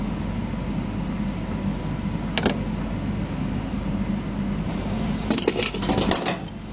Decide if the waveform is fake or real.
real